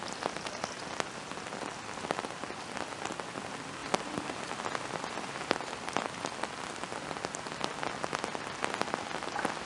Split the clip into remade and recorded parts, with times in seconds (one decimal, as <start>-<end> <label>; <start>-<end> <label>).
0.0-9.7 recorded